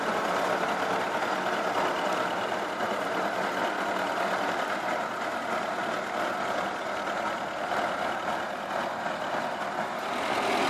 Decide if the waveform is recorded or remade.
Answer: recorded